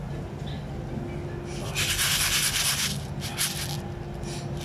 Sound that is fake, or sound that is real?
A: real